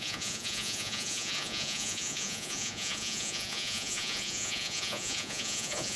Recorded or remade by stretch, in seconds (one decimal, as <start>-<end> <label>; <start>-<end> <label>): 0.0-6.0 remade